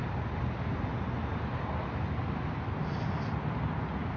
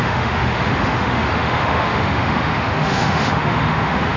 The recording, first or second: first